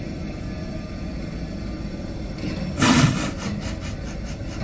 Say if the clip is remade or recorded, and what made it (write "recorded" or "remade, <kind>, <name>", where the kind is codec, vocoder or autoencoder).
remade, vocoder, BigVGAN v2